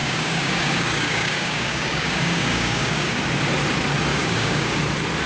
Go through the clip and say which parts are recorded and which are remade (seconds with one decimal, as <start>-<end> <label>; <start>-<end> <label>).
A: 0.0-3.2 remade; 3.2-4.1 recorded; 4.1-4.8 remade; 4.8-5.3 recorded

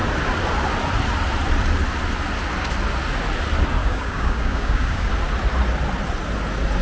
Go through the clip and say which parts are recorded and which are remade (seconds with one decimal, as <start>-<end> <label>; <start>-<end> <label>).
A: 0.0-3.8 recorded; 3.8-5.1 remade; 5.1-6.8 recorded

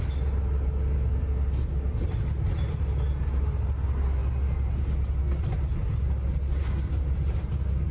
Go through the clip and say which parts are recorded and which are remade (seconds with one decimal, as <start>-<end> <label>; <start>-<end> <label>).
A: 0.0-7.9 recorded

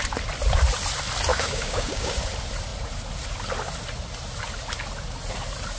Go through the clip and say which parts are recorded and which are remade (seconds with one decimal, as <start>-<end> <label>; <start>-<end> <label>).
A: 0.0-1.3 recorded; 1.3-2.2 remade; 2.2-5.8 recorded